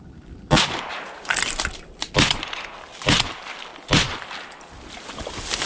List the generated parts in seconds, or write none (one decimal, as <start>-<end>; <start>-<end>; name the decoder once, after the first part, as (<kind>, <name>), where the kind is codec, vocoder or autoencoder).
0.0-3.7 (vocoder, BigVGAN v2)